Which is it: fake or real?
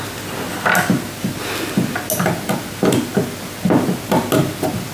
real